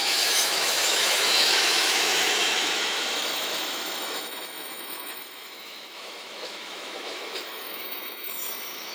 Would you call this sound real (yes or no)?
no